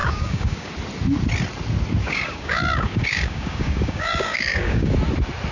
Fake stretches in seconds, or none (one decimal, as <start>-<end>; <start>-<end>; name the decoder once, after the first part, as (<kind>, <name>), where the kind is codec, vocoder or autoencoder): 0.0-0.7 (codec, DAC); 2.0-4.9